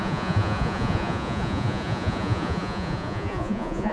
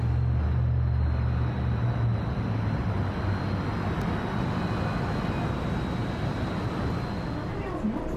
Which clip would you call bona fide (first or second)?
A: second